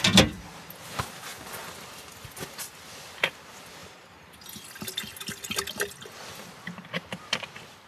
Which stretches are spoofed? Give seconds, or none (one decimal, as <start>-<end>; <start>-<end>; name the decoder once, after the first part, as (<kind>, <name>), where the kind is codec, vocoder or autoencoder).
none